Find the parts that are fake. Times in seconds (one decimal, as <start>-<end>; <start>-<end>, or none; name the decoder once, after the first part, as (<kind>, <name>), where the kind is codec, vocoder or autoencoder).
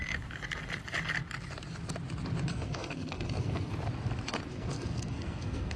2.5-3.7 (codec, SNAC); 4.5-5.8